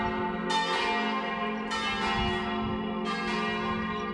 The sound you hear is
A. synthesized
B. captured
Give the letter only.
B